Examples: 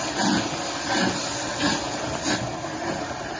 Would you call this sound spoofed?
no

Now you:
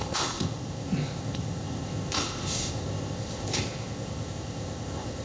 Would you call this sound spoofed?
yes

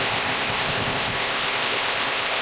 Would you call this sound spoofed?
yes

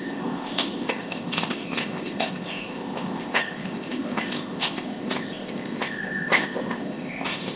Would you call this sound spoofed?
yes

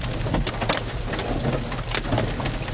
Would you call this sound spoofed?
no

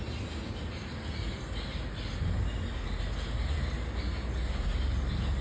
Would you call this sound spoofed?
no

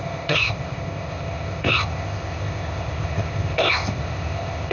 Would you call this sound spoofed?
yes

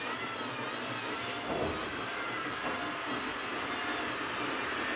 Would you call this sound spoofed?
no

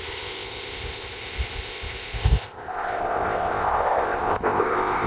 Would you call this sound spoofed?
yes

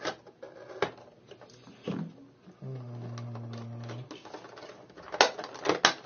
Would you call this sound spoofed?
no